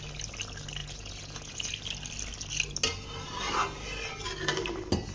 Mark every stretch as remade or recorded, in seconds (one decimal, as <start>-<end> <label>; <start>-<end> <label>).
0.0-0.8 recorded; 0.8-1.7 remade; 1.7-5.1 recorded